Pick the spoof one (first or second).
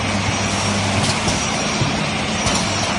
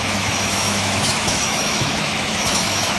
second